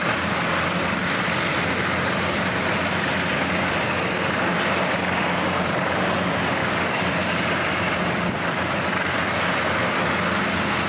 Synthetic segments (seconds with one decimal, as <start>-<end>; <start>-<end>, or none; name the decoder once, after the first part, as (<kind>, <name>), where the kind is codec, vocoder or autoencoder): 6.6-7.1 (codec, DAC)